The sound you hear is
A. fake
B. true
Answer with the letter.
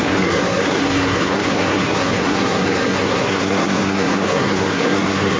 A